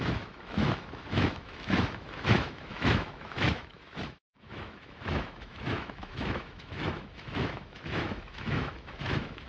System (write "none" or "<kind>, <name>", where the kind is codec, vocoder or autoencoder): autoencoder, DAC-VAE